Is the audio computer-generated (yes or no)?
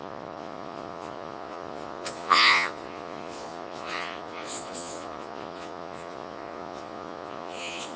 yes